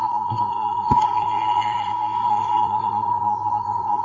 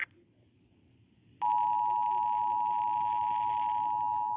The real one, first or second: second